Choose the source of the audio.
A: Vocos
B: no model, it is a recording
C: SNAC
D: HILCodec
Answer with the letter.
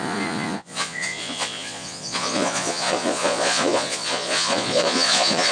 A